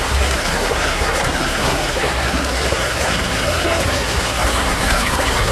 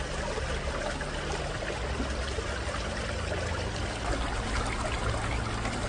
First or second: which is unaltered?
second